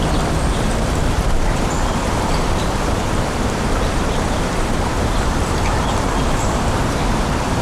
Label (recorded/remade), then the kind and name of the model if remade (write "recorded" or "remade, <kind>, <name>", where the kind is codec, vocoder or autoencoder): remade, vocoder, BigVGAN v2